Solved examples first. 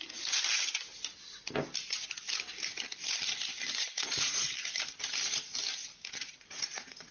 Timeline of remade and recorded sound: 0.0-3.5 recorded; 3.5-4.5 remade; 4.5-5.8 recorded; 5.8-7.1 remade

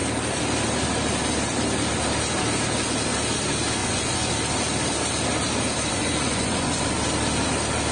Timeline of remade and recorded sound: 0.0-3.8 recorded; 3.8-4.3 remade; 4.3-5.9 recorded; 5.9-6.8 remade; 6.8-7.9 recorded

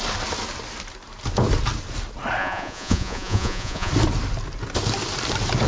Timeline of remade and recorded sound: 0.0-2.4 recorded; 2.4-3.9 remade; 3.9-5.7 recorded

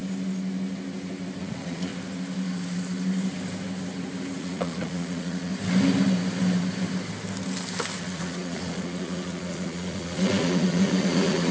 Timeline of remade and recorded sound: 0.0-1.4 recorded; 1.4-1.9 remade; 1.9-4.4 recorded; 4.4-5.5 remade; 5.5-8.0 recorded; 8.0-11.5 remade

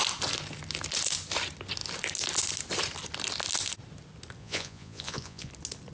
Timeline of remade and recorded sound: 0.0-4.4 recorded; 4.4-5.5 remade; 5.5-5.9 recorded